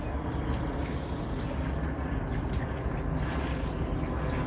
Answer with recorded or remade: recorded